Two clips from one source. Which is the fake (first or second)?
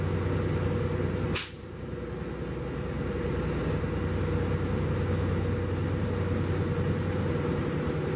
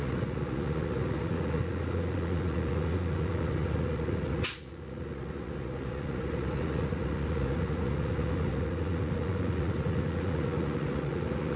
second